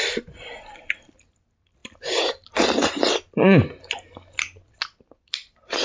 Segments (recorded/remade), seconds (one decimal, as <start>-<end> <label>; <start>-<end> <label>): 0.0-5.8 recorded